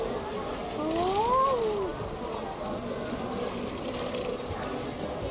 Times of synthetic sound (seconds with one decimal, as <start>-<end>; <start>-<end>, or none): none